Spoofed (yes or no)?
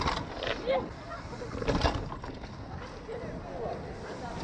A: no